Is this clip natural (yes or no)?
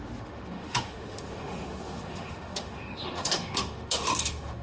no